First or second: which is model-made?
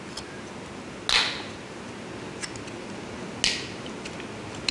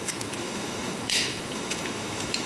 second